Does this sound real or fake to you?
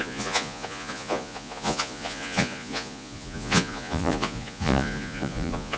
fake